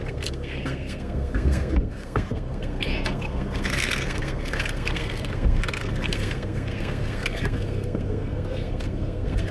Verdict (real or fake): fake